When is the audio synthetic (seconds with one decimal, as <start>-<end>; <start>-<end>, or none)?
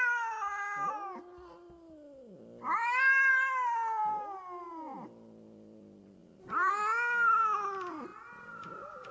6.2-6.7